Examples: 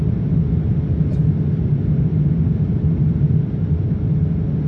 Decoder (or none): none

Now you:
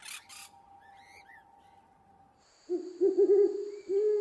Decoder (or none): none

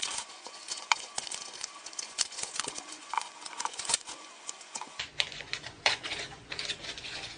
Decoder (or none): vocoder, Vocos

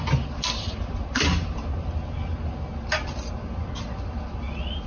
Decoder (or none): none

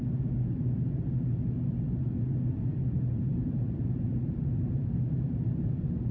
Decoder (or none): none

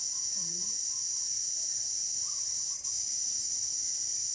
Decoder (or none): vocoder, Vocos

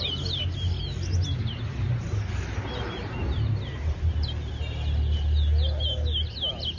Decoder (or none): none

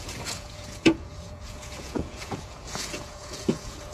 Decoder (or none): vocoder, Vocos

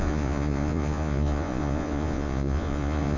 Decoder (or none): vocoder, Vocos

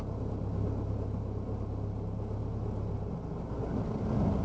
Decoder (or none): none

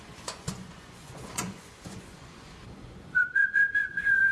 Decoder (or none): vocoder, Vocos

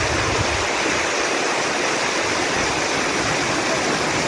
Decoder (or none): none